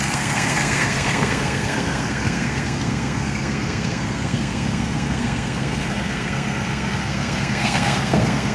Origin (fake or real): fake